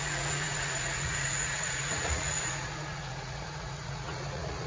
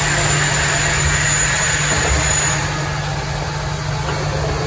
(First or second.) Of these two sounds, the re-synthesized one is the first